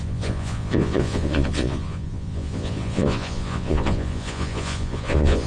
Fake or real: fake